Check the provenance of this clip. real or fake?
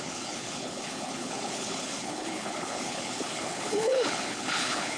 fake